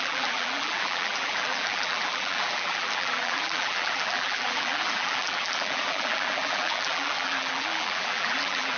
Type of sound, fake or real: fake